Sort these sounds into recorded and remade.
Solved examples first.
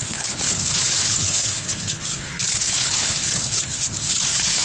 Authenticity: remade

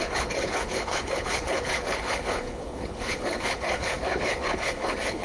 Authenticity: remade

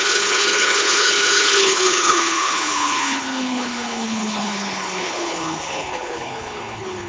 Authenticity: remade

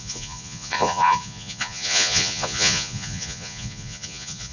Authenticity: remade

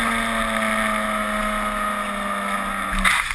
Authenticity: recorded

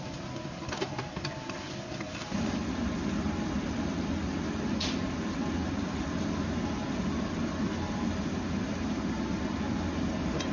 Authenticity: recorded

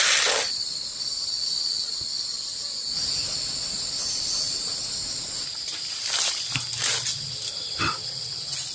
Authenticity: recorded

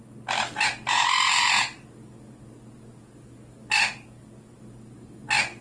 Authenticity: recorded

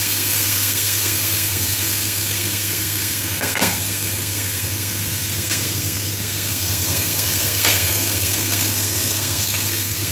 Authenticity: remade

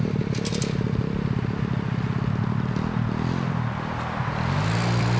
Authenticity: recorded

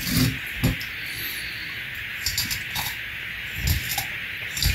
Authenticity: recorded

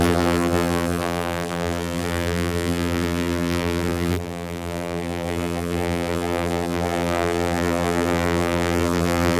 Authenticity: remade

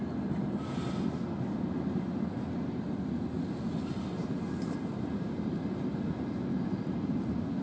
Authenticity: recorded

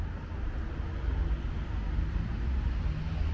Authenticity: recorded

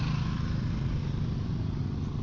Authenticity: recorded